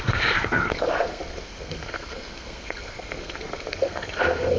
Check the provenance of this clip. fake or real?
fake